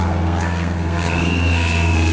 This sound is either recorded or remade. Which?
remade